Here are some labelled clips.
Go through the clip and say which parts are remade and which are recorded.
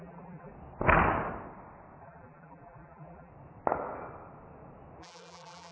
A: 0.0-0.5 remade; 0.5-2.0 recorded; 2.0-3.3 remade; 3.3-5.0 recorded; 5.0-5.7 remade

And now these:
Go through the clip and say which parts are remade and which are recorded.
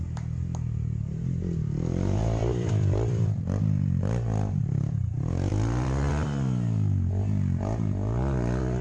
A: 0.0-2.4 recorded; 2.4-4.6 remade; 4.6-5.5 recorded; 5.5-6.1 remade; 6.1-8.8 recorded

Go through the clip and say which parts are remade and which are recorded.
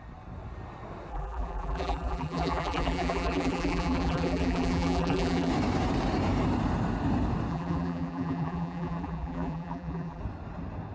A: 0.0-1.1 recorded; 1.1-5.5 remade; 5.5-7.5 recorded; 7.5-10.2 remade; 10.2-10.9 recorded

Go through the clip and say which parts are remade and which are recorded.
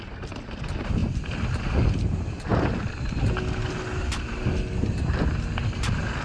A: 0.0-6.2 recorded